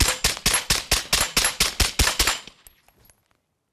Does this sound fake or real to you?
real